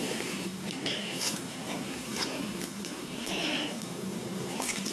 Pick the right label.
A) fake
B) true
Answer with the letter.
A